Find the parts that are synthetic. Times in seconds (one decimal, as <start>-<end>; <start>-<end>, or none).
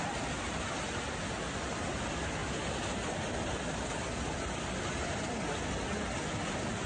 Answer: none